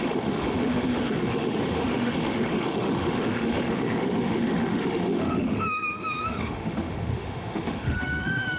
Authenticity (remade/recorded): remade